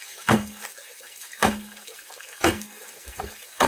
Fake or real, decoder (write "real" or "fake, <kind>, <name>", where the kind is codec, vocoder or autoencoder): fake, codec, SNAC